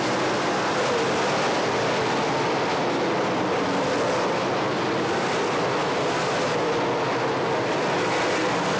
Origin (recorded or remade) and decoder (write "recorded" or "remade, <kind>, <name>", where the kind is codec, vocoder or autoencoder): recorded